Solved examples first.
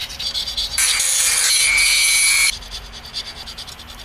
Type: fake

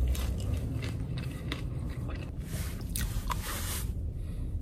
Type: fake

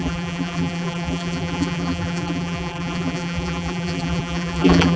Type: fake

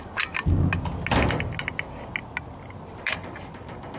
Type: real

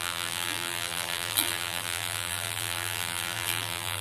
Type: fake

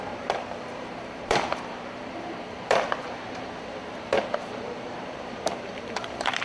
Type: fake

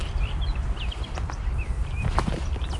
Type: fake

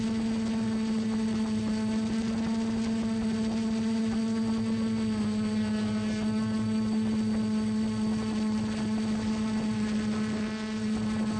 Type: real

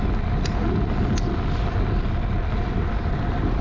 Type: real